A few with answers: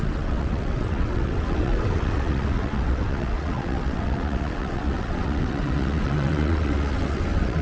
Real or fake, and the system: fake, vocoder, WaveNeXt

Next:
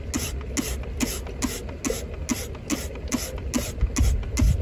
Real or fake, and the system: real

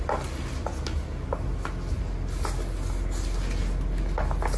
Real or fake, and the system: real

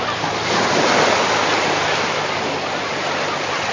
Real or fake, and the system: fake, vocoder, BigVGAN v2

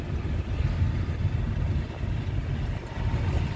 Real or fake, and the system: real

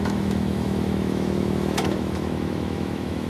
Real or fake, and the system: fake, autoencoder, DAC-VAE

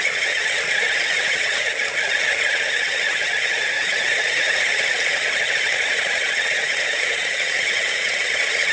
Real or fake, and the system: fake, vocoder, Vocos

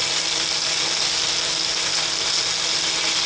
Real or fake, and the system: real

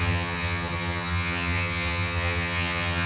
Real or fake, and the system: fake, vocoder, HiFi-GAN